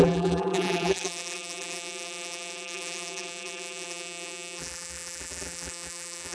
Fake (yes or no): yes